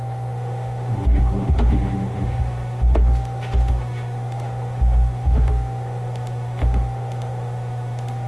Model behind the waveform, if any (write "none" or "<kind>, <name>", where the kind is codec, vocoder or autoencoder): autoencoder, DAC-VAE